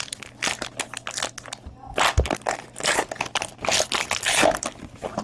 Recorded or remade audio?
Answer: recorded